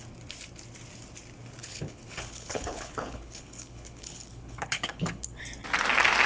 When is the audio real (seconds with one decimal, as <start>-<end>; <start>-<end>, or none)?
0.0-1.6; 5.4-6.3